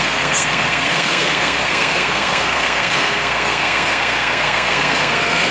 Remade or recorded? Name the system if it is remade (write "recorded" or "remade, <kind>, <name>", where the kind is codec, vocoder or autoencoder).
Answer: remade, codec, SNAC